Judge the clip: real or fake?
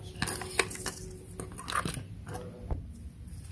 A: real